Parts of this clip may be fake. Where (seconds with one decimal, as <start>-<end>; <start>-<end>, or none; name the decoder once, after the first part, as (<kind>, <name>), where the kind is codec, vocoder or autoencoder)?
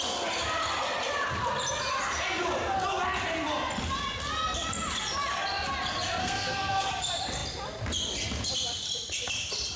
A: 6.2-6.9 (codec, SNAC)